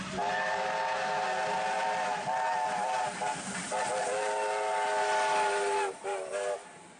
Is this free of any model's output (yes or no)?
yes